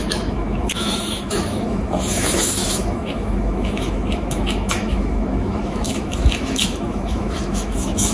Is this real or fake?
fake